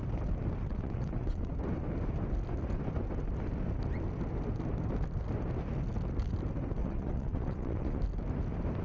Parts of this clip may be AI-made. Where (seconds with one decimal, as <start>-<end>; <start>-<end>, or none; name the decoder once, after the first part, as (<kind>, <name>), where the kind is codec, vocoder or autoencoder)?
0.7-1.5 (vocoder, WaveNeXt); 6.8-8.0